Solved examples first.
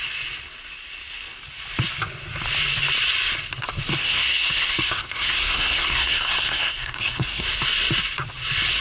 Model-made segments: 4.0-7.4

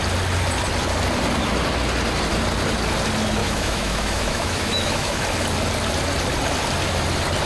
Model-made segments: 3.4-5.2

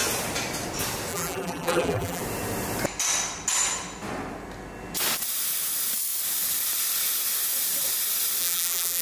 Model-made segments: 1.1-2.2; 8.4-9.0